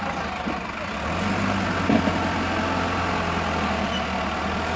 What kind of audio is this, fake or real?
real